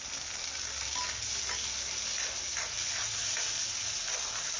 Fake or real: real